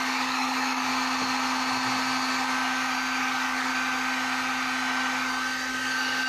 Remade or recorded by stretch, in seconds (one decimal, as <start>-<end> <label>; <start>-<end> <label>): 0.0-0.9 remade; 0.9-3.2 recorded; 3.2-3.7 remade; 3.7-5.7 recorded; 5.7-6.3 remade